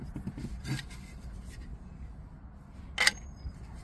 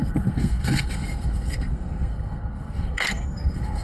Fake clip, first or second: second